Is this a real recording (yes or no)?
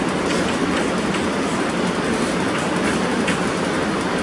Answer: yes